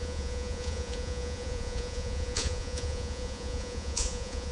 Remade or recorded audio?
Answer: remade